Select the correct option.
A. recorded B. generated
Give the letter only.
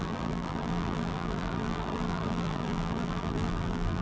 B